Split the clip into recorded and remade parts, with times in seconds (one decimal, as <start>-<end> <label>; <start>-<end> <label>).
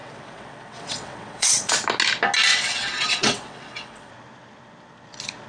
0.0-1.7 remade; 1.7-2.5 recorded; 2.5-4.1 remade; 4.1-5.5 recorded